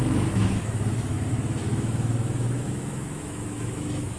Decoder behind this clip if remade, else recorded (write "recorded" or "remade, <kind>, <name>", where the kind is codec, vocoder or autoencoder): remade, autoencoder, DAC-VAE